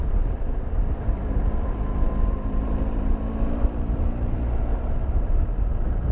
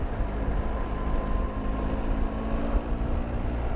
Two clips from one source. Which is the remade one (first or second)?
first